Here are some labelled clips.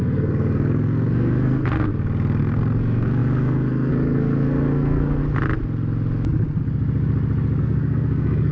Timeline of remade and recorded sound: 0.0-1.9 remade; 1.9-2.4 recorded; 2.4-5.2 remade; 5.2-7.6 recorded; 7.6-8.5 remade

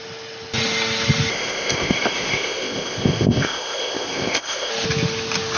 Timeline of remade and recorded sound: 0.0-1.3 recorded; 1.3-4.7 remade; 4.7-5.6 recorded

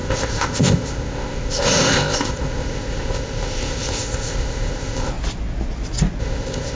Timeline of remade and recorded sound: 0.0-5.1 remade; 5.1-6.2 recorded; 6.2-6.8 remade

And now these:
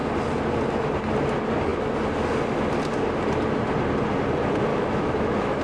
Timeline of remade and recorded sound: 0.0-4.7 recorded; 4.7-5.6 remade